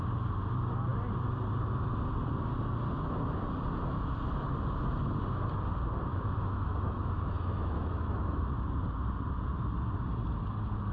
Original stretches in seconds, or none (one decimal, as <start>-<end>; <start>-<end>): 0.0-6.1; 8.4-10.9